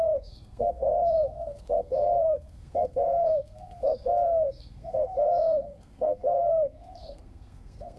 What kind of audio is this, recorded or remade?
remade